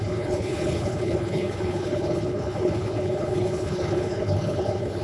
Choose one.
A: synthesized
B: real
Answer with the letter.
A